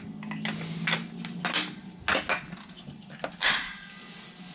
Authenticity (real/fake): real